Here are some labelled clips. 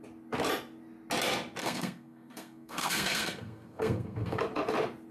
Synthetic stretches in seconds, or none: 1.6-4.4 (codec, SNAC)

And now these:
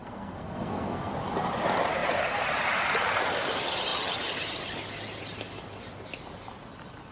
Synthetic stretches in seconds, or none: 0.0-1.1 (codec, SNAC)

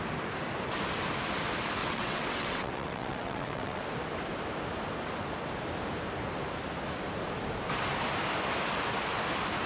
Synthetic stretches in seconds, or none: 1.8-3.8 (vocoder, WaveNeXt)

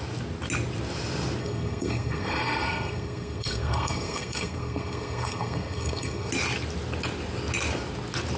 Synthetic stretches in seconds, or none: 1.4-6.3 (codec, SNAC)

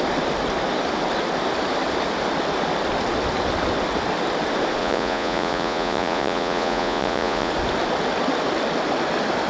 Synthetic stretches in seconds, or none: 4.8-7.5 (vocoder, Vocos)

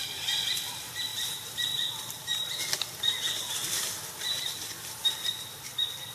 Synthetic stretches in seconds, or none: none